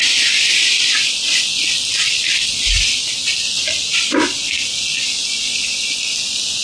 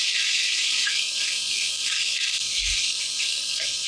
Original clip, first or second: first